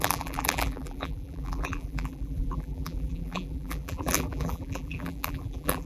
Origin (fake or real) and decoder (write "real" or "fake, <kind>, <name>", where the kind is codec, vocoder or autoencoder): fake, vocoder, BigVGAN v2